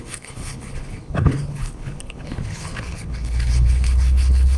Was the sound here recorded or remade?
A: remade